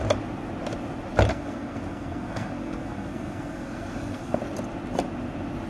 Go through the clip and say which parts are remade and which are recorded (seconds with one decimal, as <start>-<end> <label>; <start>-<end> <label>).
0.0-1.3 recorded; 1.3-4.4 remade; 4.4-5.7 recorded